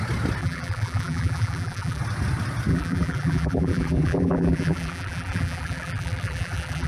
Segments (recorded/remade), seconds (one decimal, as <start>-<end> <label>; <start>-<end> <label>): 0.0-0.4 recorded; 0.4-2.0 remade; 2.0-2.7 recorded; 2.7-6.9 remade